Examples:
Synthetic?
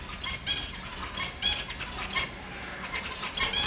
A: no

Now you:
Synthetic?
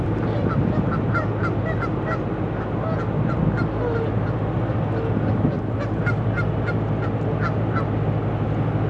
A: no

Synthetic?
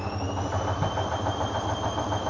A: no